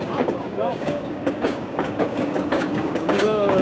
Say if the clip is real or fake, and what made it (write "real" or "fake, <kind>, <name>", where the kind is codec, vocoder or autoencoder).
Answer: fake, codec, DAC